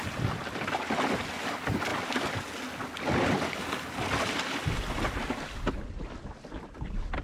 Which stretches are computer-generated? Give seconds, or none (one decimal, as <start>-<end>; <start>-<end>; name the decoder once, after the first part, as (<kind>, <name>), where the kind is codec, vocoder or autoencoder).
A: none